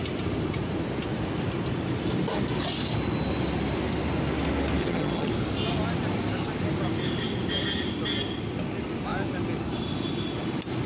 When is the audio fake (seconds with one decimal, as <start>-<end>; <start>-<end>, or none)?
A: 4.8-5.3